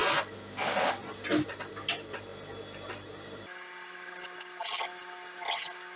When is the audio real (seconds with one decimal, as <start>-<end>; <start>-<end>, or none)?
0.0-6.0